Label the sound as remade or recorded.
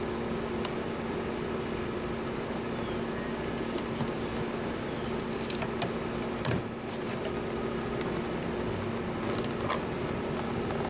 recorded